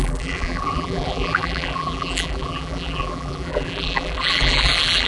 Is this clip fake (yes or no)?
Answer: yes